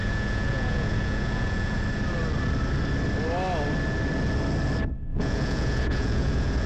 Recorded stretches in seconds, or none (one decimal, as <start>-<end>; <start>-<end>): 1.8-5.1